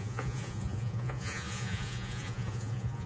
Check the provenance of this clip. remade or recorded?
remade